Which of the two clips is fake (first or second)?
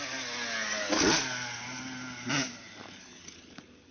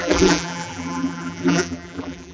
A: second